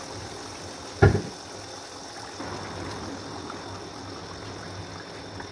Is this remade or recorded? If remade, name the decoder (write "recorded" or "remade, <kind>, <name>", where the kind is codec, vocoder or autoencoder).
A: recorded